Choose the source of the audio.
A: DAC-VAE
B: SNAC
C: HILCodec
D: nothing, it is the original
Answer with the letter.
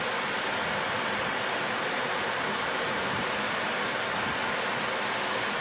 D